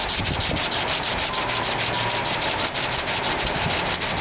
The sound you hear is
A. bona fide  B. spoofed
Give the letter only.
A